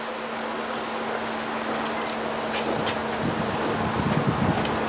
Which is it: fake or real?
real